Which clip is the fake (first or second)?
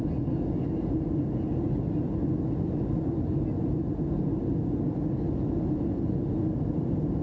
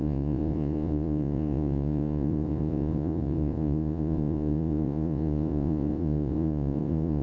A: second